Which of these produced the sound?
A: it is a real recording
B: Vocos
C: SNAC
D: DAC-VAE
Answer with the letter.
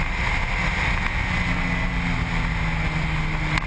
A